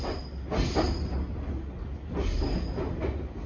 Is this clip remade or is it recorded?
recorded